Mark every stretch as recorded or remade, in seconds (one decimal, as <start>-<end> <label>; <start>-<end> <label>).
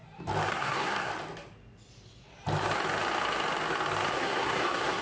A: 0.0-0.5 recorded; 0.5-1.1 remade; 1.1-4.1 recorded; 4.1-5.0 remade